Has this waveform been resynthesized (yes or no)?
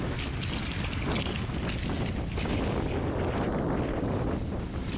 no